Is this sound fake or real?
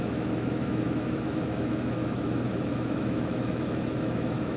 fake